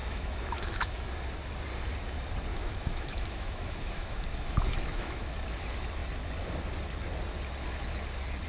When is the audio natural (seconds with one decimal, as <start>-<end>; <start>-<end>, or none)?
1.0-2.5; 5.3-8.5